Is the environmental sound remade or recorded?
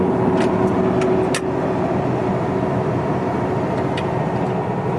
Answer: recorded